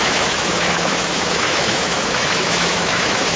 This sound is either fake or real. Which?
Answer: fake